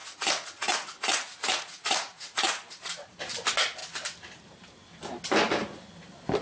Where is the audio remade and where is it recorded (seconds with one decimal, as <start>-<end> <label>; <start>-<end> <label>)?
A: 0.0-3.2 remade; 3.2-6.4 recorded